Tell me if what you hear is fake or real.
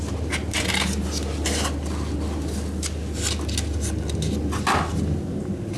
real